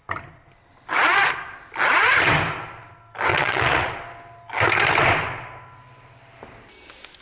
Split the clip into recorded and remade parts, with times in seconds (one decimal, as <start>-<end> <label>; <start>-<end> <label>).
0.0-3.3 recorded; 3.3-3.9 remade; 3.9-7.2 recorded